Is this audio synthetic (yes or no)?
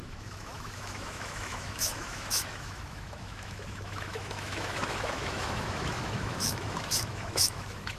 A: yes